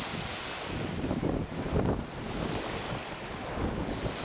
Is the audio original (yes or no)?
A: yes